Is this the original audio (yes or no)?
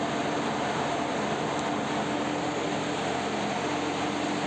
yes